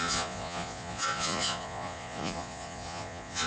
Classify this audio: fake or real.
fake